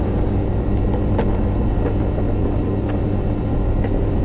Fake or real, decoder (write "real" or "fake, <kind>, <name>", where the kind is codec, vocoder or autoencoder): real